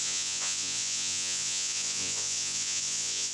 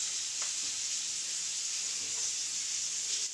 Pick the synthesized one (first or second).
first